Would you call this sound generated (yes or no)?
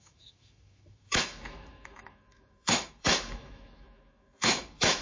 yes